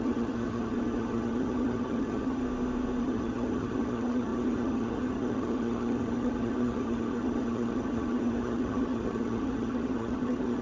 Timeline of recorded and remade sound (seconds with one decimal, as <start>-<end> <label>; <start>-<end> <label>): 0.0-2.4 remade; 2.4-3.0 recorded; 3.0-10.6 remade